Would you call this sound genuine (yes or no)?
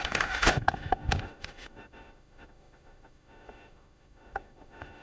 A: no